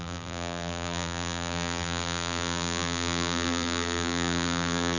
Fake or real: fake